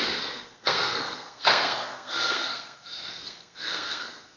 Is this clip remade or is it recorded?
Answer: remade